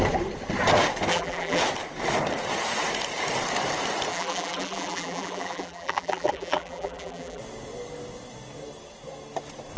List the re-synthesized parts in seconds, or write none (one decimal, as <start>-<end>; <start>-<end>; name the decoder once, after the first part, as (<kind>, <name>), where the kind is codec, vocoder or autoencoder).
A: 1.1-1.6 (vocoder, BigVGAN v2); 4.1-7.4